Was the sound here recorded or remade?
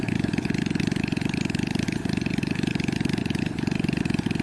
recorded